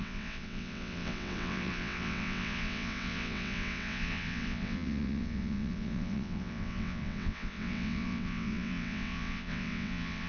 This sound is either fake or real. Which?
fake